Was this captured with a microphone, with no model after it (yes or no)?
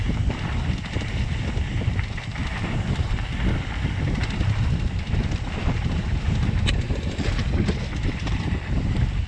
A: no